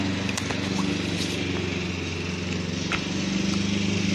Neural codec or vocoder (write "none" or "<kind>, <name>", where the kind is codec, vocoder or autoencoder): none